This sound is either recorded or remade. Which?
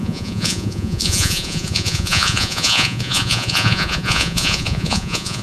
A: remade